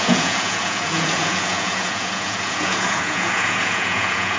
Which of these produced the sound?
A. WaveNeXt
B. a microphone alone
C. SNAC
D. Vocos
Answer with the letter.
D